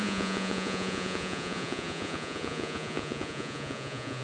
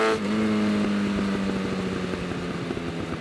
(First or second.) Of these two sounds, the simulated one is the first